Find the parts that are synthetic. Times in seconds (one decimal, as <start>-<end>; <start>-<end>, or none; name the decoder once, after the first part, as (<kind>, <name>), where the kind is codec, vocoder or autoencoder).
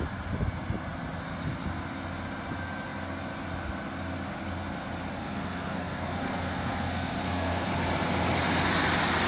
5.2-7.7 (codec, SNAC)